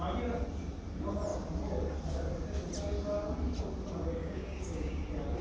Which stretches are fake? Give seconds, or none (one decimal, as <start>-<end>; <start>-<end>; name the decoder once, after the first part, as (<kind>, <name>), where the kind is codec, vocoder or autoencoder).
4.2-5.0 (codec, DAC)